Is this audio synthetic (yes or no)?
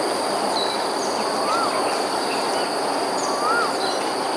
no